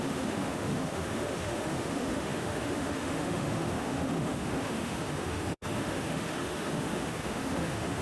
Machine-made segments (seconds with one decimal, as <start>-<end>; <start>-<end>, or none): 0.0-8.0

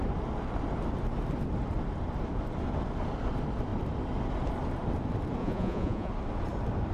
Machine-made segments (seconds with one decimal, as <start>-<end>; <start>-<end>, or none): 5.4-6.1

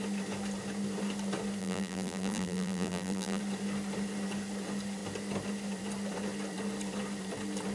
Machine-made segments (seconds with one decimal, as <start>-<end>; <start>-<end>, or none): 1.6-3.4